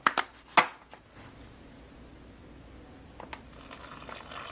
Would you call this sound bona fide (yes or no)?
yes